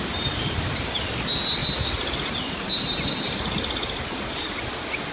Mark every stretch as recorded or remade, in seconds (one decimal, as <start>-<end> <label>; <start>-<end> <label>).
0.0-5.1 recorded